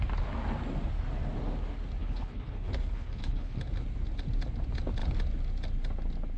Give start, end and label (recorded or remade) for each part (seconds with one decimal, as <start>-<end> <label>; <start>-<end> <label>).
0.0-2.0 recorded; 2.0-3.6 remade; 3.6-6.4 recorded

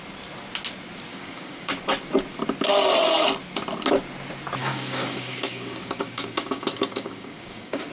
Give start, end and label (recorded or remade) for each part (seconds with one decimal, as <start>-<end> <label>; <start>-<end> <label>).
0.0-1.1 recorded; 1.1-1.7 remade; 1.7-4.6 recorded; 4.6-7.9 remade

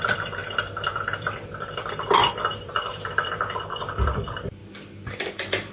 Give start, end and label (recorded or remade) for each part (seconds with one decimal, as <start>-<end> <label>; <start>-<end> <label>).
0.0-4.6 remade; 4.6-5.1 recorded; 5.1-5.7 remade